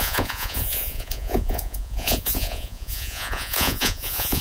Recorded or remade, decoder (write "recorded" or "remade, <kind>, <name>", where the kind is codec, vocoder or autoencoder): remade, vocoder, Vocos